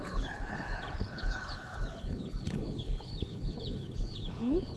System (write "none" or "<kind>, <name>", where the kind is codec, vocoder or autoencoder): codec, HILCodec